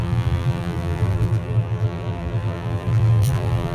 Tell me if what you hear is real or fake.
fake